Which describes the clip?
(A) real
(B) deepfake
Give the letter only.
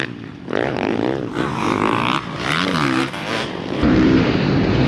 B